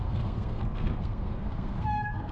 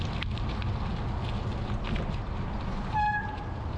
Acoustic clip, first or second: second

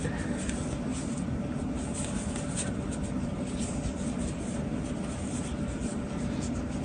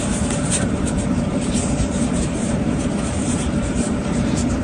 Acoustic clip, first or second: first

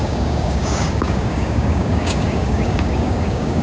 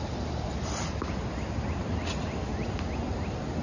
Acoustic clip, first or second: second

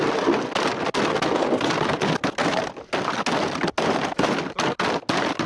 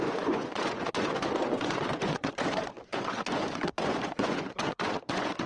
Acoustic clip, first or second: first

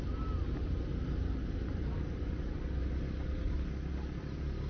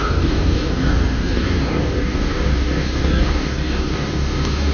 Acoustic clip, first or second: first